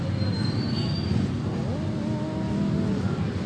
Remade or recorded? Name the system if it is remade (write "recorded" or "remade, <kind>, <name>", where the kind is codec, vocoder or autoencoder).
recorded